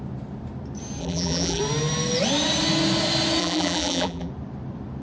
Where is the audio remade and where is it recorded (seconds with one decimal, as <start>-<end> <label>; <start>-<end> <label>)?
0.0-1.0 recorded; 1.0-1.6 remade; 1.6-3.4 recorded; 3.4-4.3 remade; 4.3-5.0 recorded

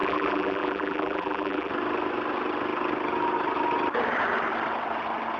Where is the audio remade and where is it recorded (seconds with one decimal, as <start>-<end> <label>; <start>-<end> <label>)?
0.0-1.7 remade; 1.7-5.4 recorded

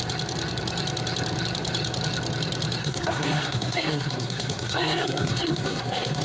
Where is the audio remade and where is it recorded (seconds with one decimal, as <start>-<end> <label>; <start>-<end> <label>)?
0.0-2.8 recorded; 2.8-6.2 remade